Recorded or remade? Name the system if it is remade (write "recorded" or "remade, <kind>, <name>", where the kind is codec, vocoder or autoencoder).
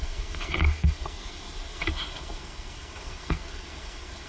remade, codec, SNAC